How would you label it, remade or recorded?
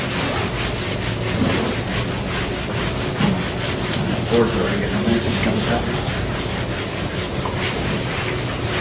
recorded